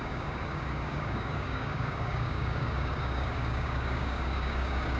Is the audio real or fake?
fake